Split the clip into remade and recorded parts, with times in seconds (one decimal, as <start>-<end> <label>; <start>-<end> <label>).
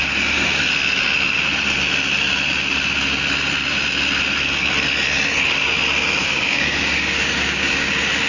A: 0.0-6.2 recorded; 6.2-7.9 remade; 7.9-8.3 recorded